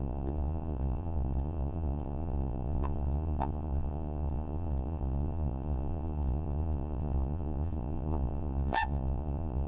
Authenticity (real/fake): fake